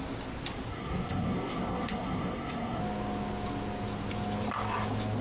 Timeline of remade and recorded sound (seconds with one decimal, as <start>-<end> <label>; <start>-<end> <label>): 0.0-0.7 recorded; 0.7-2.8 remade; 2.8-5.2 recorded